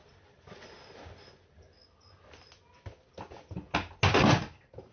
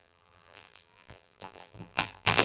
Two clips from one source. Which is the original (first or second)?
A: first